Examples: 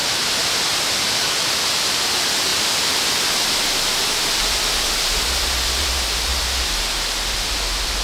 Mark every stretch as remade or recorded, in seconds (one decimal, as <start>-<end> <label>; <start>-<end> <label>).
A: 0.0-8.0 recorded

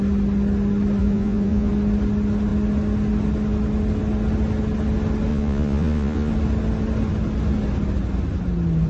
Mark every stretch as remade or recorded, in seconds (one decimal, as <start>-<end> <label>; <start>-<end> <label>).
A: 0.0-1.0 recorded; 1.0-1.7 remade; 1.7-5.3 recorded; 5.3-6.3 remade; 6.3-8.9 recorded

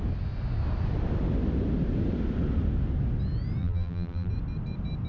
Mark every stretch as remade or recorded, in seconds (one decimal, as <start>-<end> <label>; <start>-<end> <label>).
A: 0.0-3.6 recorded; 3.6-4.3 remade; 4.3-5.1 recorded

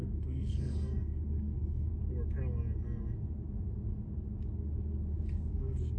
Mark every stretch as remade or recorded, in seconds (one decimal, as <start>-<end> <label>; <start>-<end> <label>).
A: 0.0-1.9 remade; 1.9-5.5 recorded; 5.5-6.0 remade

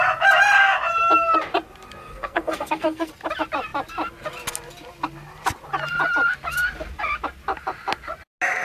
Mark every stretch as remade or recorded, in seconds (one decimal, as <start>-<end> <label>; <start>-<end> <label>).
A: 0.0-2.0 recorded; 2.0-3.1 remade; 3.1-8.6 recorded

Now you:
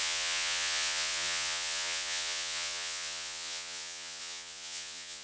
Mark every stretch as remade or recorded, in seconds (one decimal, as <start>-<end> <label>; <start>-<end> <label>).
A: 0.0-5.2 remade